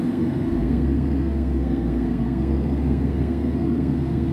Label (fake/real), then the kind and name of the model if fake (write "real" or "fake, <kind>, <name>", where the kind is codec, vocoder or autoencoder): fake, codec, SNAC